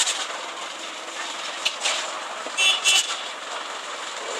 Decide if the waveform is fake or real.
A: real